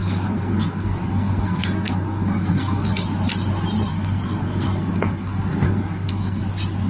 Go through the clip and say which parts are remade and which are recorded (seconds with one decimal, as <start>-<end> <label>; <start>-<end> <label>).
0.0-2.9 remade; 2.9-3.9 recorded; 3.9-6.4 remade; 6.4-6.9 recorded